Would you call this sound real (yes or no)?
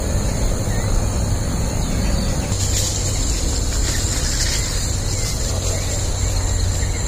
yes